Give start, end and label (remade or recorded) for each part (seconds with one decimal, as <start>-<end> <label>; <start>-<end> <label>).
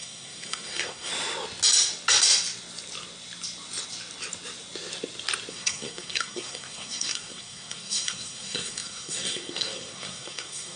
0.0-1.1 remade; 1.1-5.5 recorded; 5.5-10.8 remade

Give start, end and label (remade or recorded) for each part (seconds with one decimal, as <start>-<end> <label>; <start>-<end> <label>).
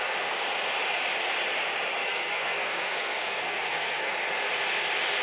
0.0-2.0 recorded; 2.0-4.1 remade; 4.1-5.2 recorded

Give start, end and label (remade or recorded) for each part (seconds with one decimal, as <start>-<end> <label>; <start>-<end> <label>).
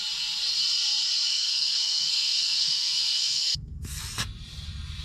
0.0-1.3 recorded; 1.3-4.0 remade; 4.0-5.0 recorded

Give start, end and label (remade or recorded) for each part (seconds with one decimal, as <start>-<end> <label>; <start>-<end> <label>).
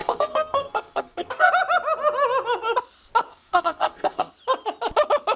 0.0-1.5 remade; 1.5-3.3 recorded; 3.3-4.3 remade; 4.3-5.4 recorded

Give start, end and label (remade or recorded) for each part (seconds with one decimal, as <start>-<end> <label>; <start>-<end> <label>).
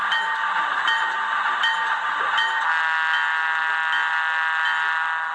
0.0-5.3 recorded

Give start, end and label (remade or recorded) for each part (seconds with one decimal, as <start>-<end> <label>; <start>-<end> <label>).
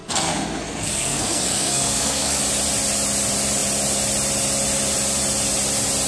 0.0-2.4 remade; 2.4-6.1 recorded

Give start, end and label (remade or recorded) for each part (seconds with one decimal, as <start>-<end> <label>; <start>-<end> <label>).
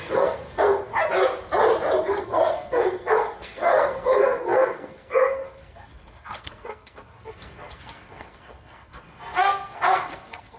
0.0-0.9 remade; 0.9-2.2 recorded; 2.2-10.6 remade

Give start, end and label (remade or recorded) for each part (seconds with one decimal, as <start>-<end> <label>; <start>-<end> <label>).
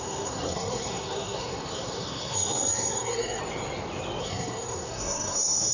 0.0-3.4 remade; 3.4-4.2 recorded; 4.2-5.7 remade